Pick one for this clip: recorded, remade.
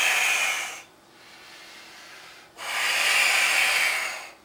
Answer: recorded